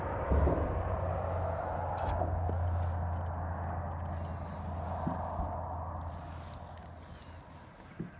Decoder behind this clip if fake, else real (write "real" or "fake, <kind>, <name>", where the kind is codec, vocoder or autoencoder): real